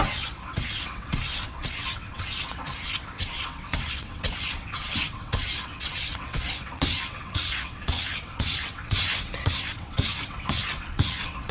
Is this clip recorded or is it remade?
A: remade